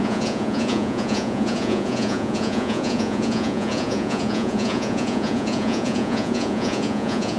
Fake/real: fake